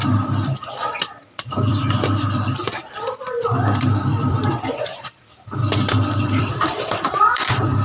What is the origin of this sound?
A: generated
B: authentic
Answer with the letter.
A